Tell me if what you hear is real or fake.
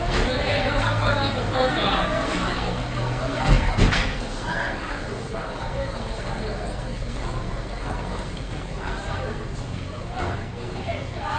fake